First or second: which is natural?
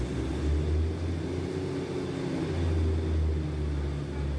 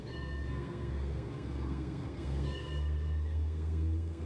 first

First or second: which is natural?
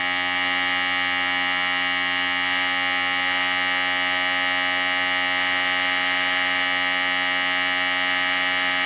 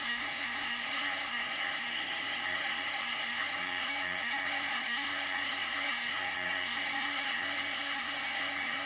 first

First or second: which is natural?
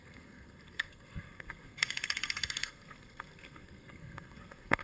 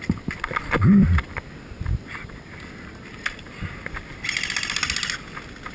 second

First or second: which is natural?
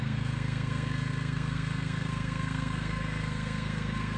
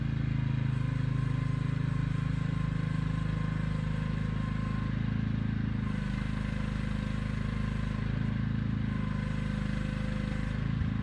second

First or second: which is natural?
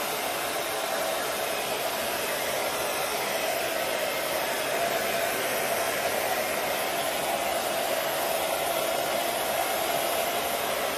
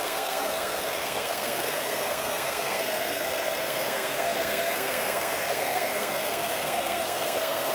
first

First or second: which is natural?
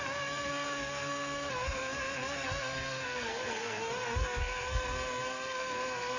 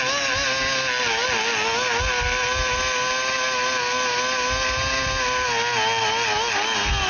second